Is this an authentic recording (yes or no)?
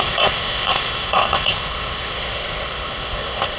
no